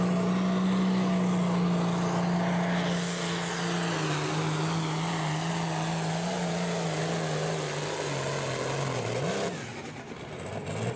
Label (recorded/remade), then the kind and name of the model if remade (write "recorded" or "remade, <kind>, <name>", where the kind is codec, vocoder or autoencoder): recorded